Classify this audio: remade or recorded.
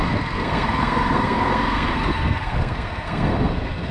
remade